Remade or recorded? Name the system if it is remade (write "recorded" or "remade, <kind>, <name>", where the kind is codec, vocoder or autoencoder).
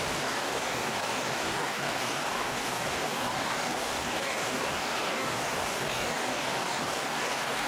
remade, codec, DAC